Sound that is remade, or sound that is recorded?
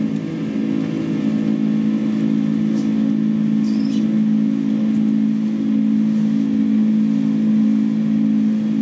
recorded